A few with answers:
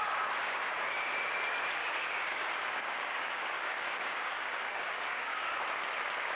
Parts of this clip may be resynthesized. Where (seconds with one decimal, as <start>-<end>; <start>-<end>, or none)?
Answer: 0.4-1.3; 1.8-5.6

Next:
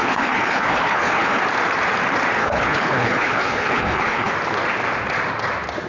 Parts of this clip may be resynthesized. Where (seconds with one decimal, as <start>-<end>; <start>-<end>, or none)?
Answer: 0.0-1.4; 2.4-4.3

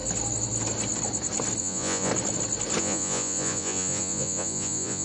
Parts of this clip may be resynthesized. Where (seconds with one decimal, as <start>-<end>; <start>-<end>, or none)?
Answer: 1.6-2.1; 2.8-5.0